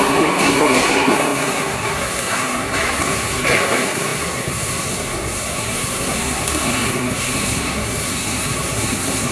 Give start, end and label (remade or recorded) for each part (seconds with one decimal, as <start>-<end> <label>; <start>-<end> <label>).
0.0-9.3 remade